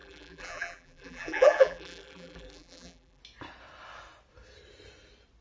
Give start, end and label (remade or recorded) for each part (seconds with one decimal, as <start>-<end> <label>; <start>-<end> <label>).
0.0-3.2 remade; 3.2-5.4 recorded